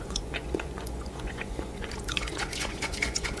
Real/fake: fake